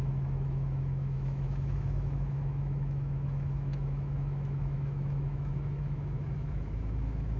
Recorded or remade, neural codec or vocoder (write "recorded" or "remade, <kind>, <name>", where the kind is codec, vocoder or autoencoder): remade, autoencoder, DAC-VAE